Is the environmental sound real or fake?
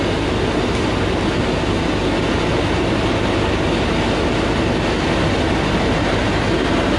real